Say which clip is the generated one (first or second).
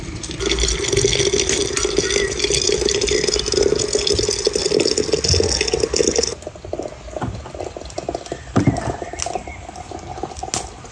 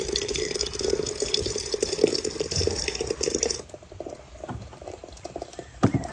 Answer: second